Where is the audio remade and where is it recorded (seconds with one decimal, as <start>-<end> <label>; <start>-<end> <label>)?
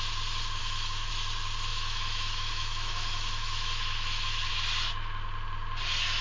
0.0-0.6 recorded; 0.6-1.1 remade; 1.1-1.7 recorded; 1.7-4.5 remade; 4.5-6.2 recorded